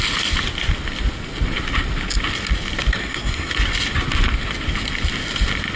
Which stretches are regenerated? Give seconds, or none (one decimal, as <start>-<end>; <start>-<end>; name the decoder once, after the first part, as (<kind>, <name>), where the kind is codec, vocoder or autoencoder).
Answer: 3.0-3.5 (codec, SNAC)